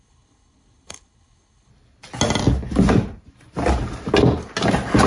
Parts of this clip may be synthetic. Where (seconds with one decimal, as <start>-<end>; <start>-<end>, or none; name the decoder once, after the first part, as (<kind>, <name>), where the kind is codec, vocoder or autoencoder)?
0.0-1.7 (codec, HILCodec)